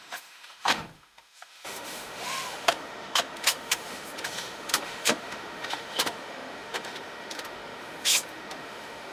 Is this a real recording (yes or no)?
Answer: no